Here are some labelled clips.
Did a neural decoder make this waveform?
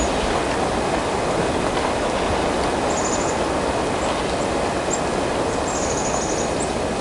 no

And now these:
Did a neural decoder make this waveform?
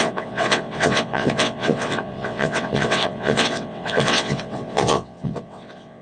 yes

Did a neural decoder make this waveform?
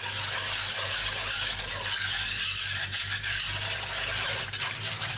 no